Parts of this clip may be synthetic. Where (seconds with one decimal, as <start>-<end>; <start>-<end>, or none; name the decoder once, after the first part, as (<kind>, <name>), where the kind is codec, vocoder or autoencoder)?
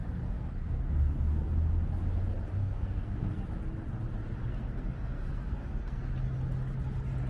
0.0-1.5 (codec, SNAC); 2.6-3.5; 4.5-6.1